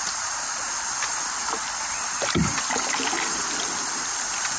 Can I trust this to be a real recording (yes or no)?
no